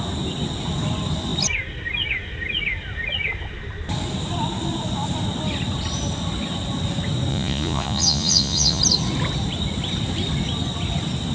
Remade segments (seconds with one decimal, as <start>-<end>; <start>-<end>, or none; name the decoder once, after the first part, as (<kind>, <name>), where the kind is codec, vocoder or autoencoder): 7.3-8.8 (vocoder, Vocos)